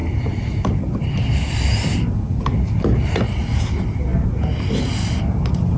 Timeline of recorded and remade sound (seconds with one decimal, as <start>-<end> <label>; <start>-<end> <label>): 0.0-5.8 recorded